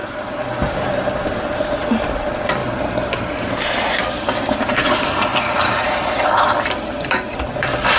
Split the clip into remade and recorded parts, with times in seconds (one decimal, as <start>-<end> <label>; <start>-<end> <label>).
0.0-0.8 remade; 0.8-2.6 recorded; 2.6-4.0 remade; 4.0-5.3 recorded; 5.3-7.3 remade; 7.3-8.0 recorded